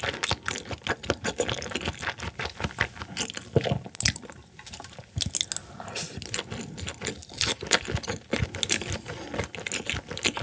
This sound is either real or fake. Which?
real